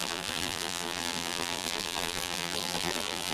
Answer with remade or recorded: remade